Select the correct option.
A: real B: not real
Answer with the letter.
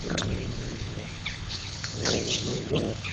B